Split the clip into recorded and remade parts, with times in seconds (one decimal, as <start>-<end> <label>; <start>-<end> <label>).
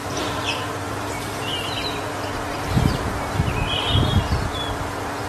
0.0-3.2 remade; 3.2-5.3 recorded